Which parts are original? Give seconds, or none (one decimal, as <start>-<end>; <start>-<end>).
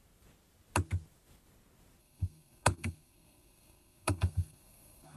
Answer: 0.0-2.0